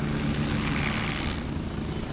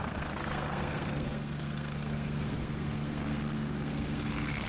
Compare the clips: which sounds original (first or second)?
first